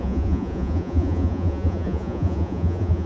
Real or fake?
fake